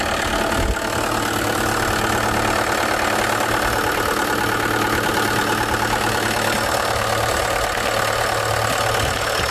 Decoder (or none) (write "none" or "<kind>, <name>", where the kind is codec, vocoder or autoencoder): none